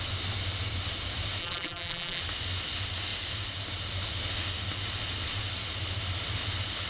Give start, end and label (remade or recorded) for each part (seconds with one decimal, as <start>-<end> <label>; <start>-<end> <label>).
0.0-1.4 recorded; 1.4-2.2 remade; 2.2-6.9 recorded